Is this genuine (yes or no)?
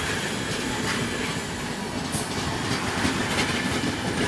yes